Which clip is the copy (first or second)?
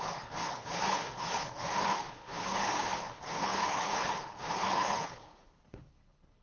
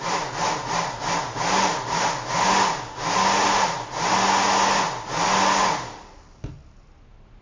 first